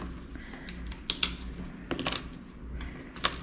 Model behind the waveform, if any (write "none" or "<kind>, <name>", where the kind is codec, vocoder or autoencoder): none